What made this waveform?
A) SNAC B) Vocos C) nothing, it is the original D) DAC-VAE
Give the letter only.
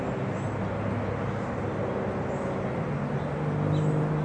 C